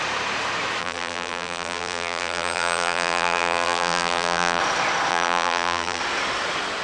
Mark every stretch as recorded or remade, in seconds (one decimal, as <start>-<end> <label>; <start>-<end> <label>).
0.0-0.8 recorded; 0.8-4.6 remade; 4.6-5.1 recorded; 5.1-6.0 remade; 6.0-6.8 recorded

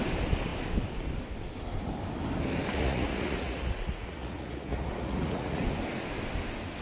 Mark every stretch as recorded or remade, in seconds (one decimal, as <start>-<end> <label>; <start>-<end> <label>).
0.0-2.7 recorded; 2.7-5.6 remade; 5.6-6.8 recorded

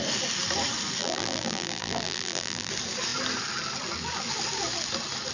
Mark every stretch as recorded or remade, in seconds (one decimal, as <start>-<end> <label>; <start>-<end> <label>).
0.0-1.0 recorded; 1.0-2.7 remade; 2.7-5.3 recorded